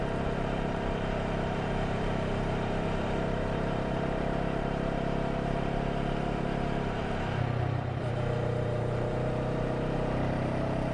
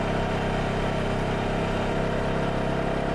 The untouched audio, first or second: second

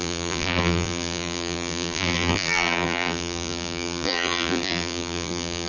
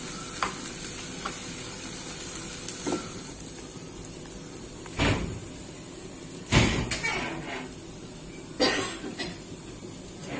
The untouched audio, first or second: second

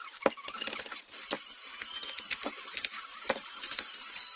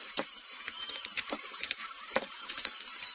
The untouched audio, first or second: first